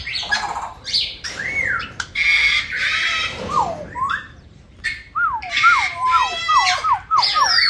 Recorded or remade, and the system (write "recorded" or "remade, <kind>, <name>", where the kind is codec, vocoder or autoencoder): remade, vocoder, BigVGAN v2